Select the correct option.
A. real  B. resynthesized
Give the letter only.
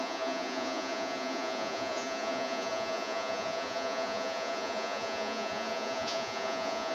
B